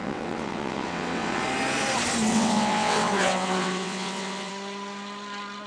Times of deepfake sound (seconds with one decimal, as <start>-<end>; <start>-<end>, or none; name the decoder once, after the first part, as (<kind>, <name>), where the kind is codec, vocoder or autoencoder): 0.0-1.4 (vocoder, WaveNeXt); 2.3-4.5